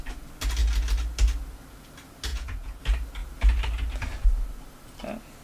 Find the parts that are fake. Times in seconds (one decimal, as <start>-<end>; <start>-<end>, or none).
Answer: 2.3-2.8